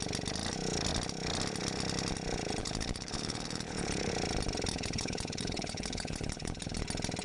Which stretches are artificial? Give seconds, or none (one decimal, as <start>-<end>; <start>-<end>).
2.6-4.1; 4.7-6.8